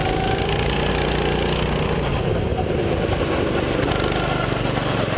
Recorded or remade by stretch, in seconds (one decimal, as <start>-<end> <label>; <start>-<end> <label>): 0.0-5.2 recorded